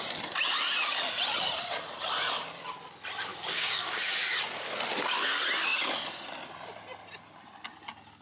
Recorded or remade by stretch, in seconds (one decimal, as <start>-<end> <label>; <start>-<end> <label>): 0.0-3.3 recorded; 3.3-4.3 remade; 4.3-8.2 recorded